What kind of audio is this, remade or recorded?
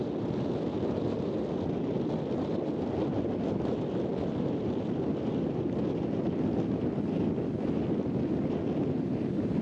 recorded